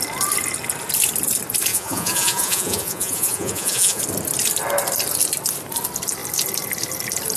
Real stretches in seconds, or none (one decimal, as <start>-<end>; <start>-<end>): 0.0-1.7; 4.0-7.4